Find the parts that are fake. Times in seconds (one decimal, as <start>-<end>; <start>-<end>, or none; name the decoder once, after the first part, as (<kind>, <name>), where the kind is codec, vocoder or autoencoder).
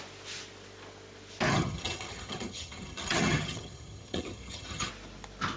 1.5-4.9 (vocoder, HiFi-GAN)